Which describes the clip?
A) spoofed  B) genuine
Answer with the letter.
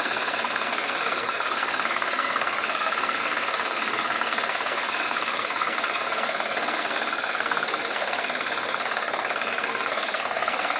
A